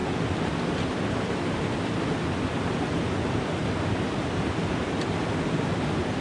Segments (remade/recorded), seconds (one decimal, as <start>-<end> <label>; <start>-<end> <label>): 0.0-6.2 recorded